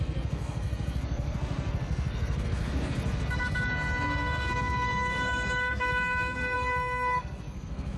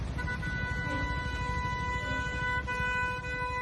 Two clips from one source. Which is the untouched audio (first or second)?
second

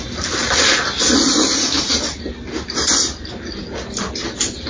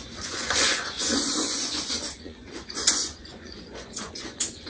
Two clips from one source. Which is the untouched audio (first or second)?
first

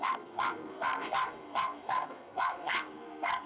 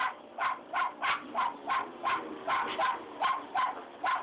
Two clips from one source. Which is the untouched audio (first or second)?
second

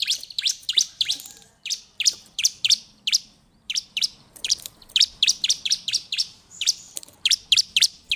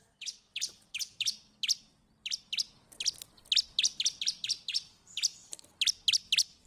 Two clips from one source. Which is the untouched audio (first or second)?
second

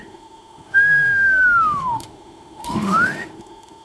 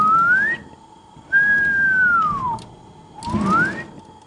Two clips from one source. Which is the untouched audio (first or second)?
second